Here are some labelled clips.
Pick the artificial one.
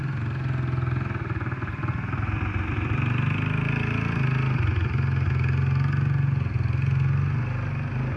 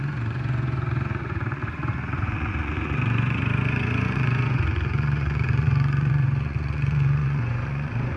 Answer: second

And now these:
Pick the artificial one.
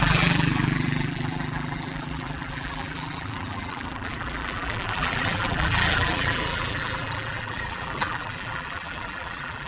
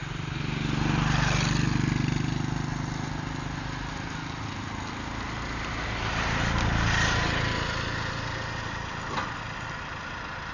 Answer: first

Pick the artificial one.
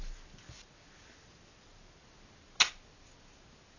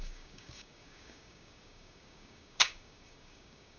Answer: second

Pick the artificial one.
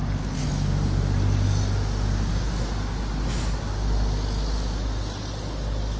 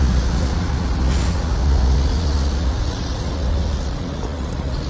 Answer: second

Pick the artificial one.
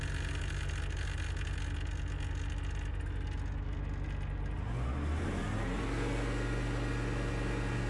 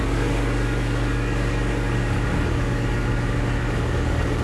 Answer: second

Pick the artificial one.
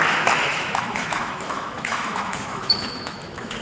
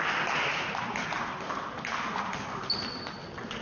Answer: first